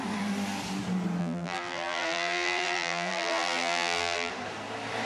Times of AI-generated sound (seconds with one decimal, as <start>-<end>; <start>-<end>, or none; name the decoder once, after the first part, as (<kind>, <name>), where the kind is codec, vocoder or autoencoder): 1.2-4.3 (vocoder, BigVGAN v2)